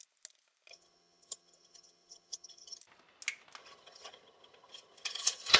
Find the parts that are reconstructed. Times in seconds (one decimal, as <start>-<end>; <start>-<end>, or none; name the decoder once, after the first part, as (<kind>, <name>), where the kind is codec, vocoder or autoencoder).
0.7-2.8 (vocoder, HiFi-GAN); 3.6-5.6